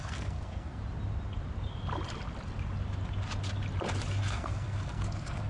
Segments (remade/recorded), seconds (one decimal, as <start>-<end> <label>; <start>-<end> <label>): 0.0-0.8 remade; 0.8-4.1 recorded; 4.1-5.5 remade